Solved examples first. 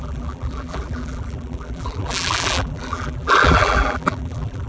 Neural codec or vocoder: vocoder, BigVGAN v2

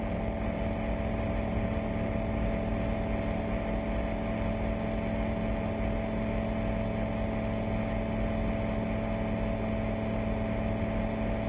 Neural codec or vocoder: none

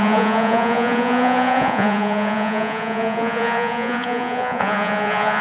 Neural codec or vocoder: vocoder, Vocos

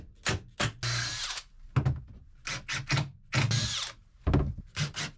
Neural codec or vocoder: none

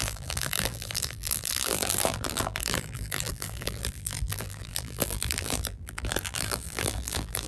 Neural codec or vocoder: vocoder, BigVGAN v2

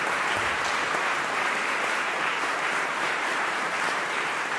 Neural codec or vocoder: vocoder, BigVGAN v2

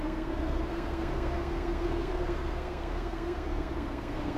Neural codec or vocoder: codec, SNAC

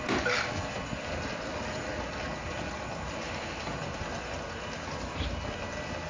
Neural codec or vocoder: none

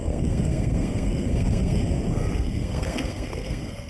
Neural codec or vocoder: codec, SNAC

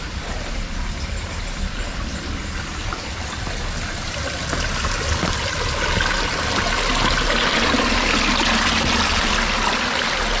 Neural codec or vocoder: none